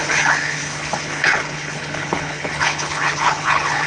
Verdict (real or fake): fake